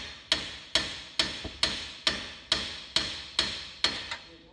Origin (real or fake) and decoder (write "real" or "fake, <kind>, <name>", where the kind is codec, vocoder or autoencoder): real